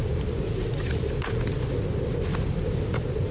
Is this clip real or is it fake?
real